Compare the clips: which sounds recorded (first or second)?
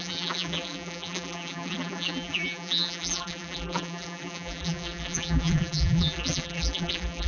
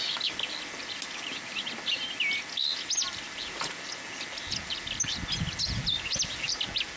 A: second